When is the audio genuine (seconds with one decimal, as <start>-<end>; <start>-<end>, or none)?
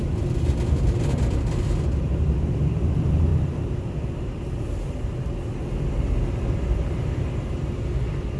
0.0-8.4